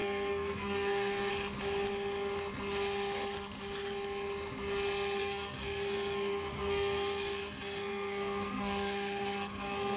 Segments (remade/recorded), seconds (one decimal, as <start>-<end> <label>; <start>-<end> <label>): 0.0-1.3 remade; 1.3-5.2 recorded; 5.2-10.0 remade